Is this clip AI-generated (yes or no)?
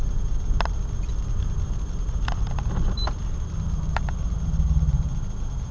no